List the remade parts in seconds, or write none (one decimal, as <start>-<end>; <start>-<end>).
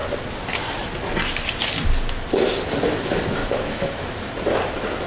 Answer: 3.4-4.2